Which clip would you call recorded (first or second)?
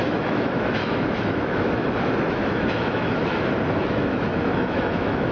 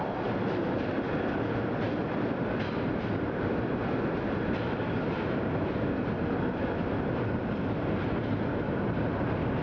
second